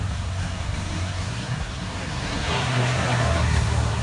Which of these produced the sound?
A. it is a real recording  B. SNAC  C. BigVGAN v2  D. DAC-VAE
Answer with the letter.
B